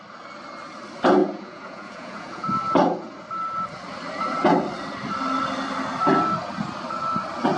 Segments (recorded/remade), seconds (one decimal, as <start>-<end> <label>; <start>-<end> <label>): 0.0-1.2 recorded; 1.2-2.5 remade; 2.5-7.6 recorded

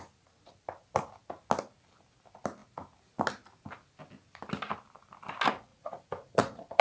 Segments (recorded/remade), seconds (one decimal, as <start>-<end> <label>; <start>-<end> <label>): 0.0-5.7 recorded; 5.7-6.8 remade

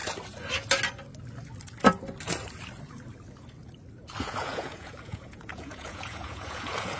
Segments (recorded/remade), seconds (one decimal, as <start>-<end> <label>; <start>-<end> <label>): 0.0-4.2 recorded; 4.2-7.0 remade

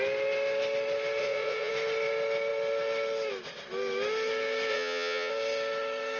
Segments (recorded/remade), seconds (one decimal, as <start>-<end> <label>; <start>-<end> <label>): 0.0-1.2 recorded; 1.2-1.7 remade; 1.7-4.7 recorded; 4.7-5.3 remade; 5.3-6.2 recorded

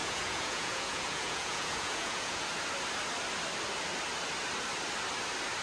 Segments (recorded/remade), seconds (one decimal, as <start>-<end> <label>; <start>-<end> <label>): 0.0-2.5 remade; 2.5-5.6 recorded

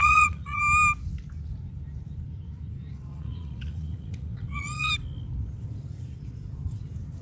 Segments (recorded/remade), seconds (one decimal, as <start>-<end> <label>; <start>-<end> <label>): 0.0-0.6 remade; 0.6-3.1 recorded; 3.1-4.9 remade; 4.9-7.2 recorded

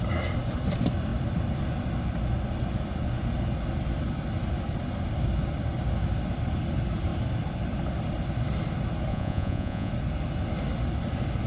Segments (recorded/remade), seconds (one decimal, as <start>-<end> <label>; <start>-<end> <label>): 0.0-9.1 recorded; 9.1-9.9 remade; 9.9-11.5 recorded